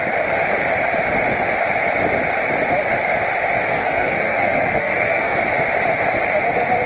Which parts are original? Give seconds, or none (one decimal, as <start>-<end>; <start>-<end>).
0.0-3.7; 5.4-6.9